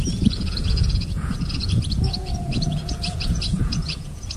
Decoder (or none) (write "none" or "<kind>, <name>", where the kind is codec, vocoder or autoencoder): vocoder, Vocos